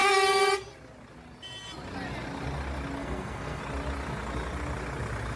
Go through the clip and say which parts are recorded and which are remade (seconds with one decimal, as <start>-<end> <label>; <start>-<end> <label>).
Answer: 0.0-0.5 remade; 0.5-3.0 recorded; 3.0-3.6 remade; 3.6-5.4 recorded